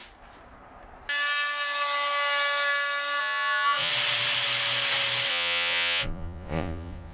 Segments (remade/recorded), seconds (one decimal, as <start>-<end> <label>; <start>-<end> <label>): 0.0-3.2 recorded; 3.2-3.9 remade; 3.9-5.3 recorded; 5.3-7.1 remade